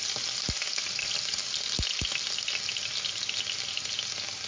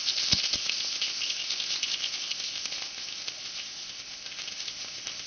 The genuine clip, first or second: first